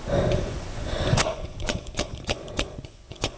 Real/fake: fake